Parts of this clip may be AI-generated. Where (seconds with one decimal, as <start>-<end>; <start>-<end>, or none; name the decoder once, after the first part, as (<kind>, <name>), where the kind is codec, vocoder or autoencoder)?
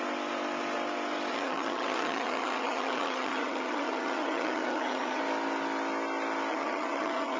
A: 1.3-5.2 (vocoder, HiFi-GAN); 6.5-7.4